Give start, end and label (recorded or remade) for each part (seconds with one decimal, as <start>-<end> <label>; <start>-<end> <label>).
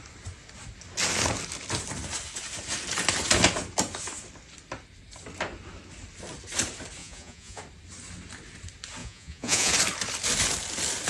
0.0-7.0 recorded; 7.0-7.6 remade; 7.6-9.0 recorded; 9.0-9.7 remade; 9.7-11.1 recorded